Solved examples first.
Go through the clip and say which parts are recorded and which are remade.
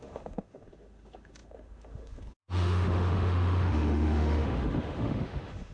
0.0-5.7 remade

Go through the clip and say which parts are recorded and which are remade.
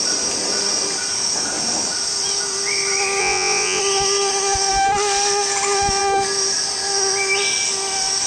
0.0-3.2 recorded; 3.2-3.8 remade; 3.8-8.3 recorded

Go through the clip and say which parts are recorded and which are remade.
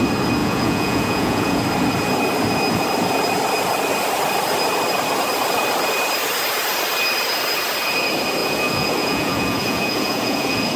0.0-0.4 recorded; 0.4-1.6 remade; 1.6-8.4 recorded; 8.4-10.8 remade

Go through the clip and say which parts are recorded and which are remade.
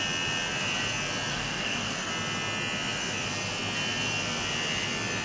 0.0-1.3 recorded; 1.3-2.1 remade; 2.1-5.2 recorded